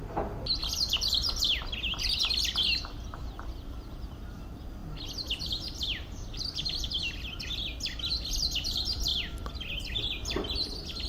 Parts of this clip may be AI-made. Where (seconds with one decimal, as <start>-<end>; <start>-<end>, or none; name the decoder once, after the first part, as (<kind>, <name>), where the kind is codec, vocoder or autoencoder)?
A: none